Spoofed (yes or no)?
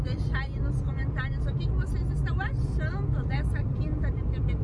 no